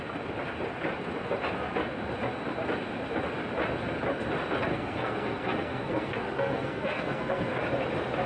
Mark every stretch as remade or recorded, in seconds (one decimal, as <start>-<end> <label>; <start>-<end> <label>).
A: 0.0-4.7 recorded; 4.7-7.6 remade; 7.6-8.3 recorded